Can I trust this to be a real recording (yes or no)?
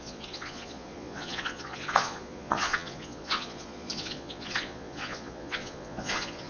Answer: no